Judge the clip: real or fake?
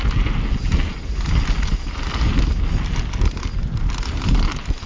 real